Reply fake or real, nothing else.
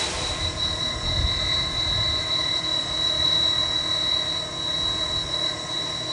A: real